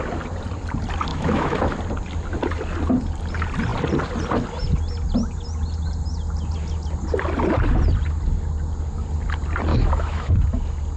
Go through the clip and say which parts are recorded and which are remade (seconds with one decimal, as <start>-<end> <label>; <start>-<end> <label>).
0.0-1.1 recorded; 1.1-1.8 remade; 1.8-9.7 recorded; 9.7-10.3 remade; 10.3-11.0 recorded